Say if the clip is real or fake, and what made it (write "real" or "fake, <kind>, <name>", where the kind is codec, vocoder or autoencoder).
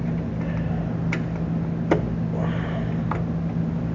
real